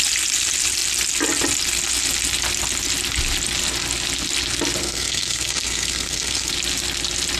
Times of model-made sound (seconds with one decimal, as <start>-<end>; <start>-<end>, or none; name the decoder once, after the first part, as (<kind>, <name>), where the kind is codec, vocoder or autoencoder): 4.8-6.5 (codec, SNAC)